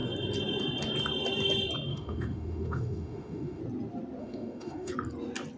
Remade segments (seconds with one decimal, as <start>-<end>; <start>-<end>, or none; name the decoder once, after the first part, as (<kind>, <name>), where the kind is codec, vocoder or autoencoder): 1.9-3.6 (autoencoder, DAC-VAE); 4.2-4.9